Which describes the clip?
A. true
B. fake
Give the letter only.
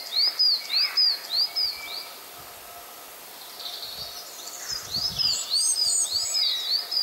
A